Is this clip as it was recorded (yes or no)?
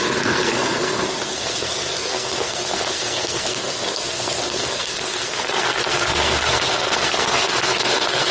no